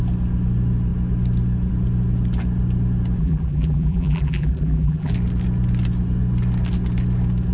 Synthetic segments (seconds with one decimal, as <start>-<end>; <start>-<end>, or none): 3.2-5.1